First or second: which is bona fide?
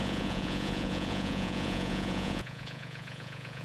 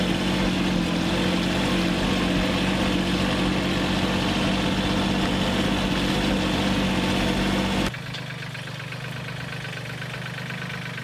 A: second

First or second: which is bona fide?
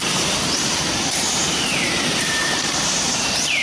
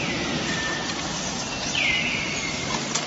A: second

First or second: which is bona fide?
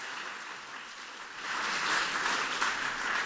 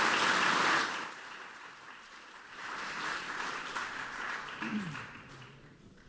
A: first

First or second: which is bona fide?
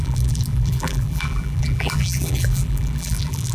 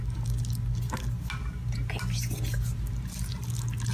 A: second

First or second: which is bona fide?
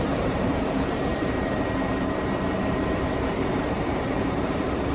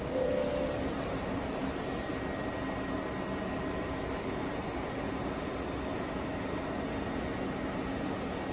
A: second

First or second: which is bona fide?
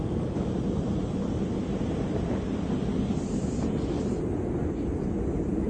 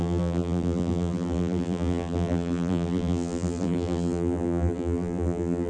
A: first